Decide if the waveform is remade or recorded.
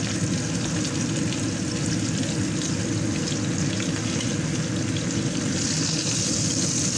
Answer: recorded